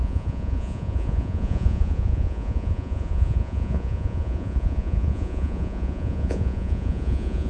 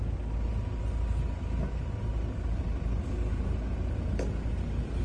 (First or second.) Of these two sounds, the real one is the second